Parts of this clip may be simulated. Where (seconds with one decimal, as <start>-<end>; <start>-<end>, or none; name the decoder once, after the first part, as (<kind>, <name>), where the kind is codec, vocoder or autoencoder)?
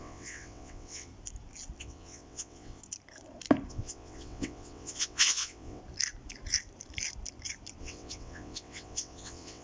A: 0.0-1.1 (vocoder, WaveNeXt); 1.8-2.8; 3.7-5.8; 7.8-9.6